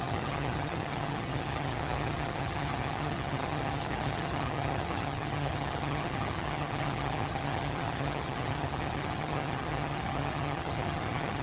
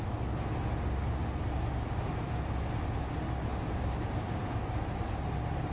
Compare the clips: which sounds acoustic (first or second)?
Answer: second